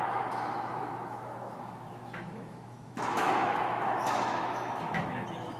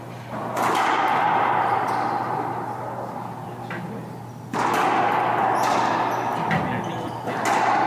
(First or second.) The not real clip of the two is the first